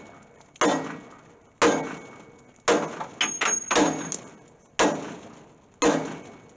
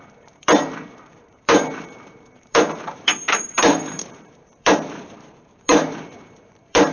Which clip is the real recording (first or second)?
first